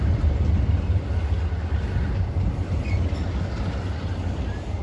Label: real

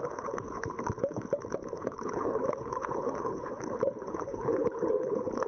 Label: fake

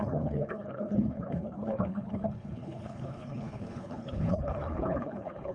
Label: fake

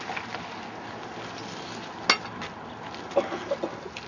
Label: real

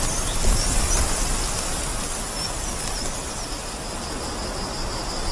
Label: real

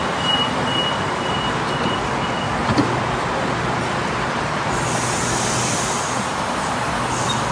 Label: real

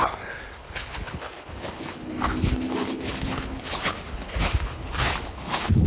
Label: fake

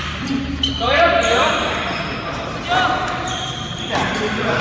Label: real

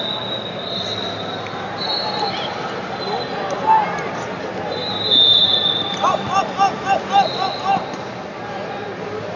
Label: real